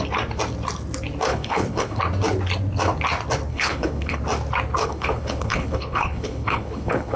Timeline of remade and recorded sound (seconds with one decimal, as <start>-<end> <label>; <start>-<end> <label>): 0.0-1.3 recorded; 1.3-2.0 remade; 2.0-3.5 recorded; 3.5-4.2 remade; 4.2-4.8 recorded; 4.8-7.2 remade

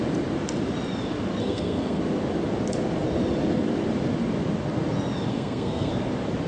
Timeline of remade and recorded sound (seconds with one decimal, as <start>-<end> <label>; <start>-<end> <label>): 0.0-1.4 recorded; 1.4-2.0 remade; 2.0-5.3 recorded; 5.3-5.9 remade; 5.9-6.5 recorded

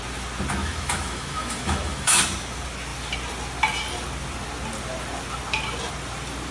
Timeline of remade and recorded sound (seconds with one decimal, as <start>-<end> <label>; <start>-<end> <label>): 0.0-0.6 recorded; 0.6-2.2 remade; 2.2-6.5 recorded

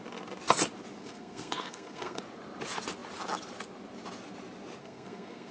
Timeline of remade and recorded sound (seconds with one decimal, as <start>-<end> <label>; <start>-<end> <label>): 0.0-1.0 recorded; 1.0-2.2 remade; 2.2-4.8 recorded; 4.8-5.5 remade